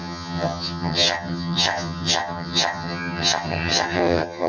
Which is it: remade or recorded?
remade